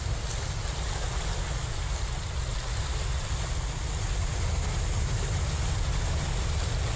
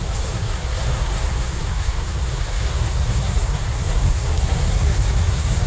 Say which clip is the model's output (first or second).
second